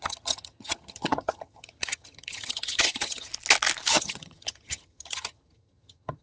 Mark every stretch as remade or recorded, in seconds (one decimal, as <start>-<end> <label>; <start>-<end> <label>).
0.0-3.3 remade; 3.3-3.9 recorded; 3.9-6.2 remade